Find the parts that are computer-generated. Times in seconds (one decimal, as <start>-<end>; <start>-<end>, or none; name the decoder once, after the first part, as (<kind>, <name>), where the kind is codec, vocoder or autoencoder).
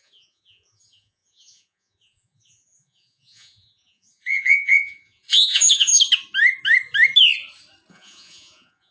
0.0-5.9 (vocoder, Vocos); 7.9-8.9